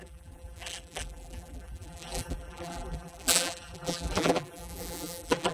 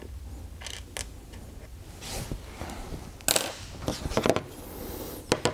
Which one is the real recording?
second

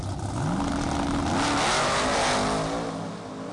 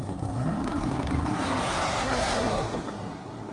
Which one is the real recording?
first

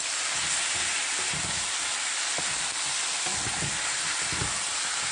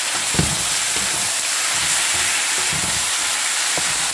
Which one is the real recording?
first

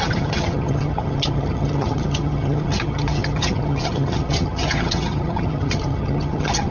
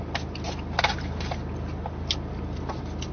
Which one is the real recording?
second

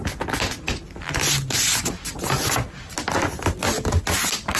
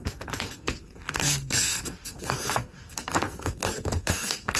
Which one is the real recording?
first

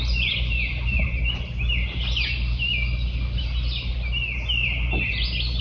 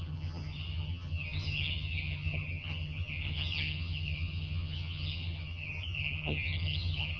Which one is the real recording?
first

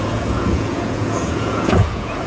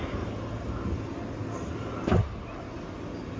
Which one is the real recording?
second